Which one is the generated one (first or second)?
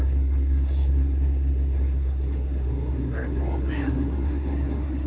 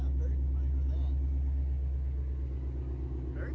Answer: first